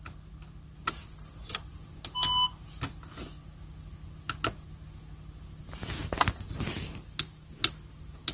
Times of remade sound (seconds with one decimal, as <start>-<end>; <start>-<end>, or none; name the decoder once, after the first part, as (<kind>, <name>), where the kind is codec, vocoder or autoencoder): none